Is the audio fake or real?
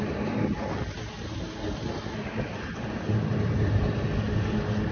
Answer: real